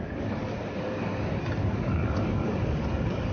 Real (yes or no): no